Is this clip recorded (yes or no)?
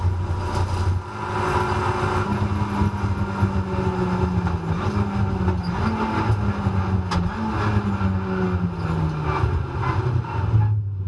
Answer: yes